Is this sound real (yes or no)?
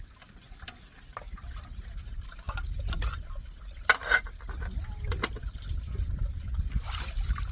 yes